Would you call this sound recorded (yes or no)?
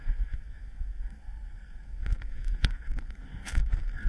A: no